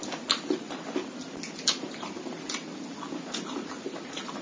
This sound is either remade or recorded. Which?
recorded